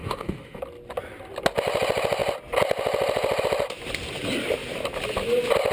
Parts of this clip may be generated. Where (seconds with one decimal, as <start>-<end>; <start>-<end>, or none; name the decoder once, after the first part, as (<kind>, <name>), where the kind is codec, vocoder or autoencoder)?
0.0-0.6 (autoencoder, DAC-VAE)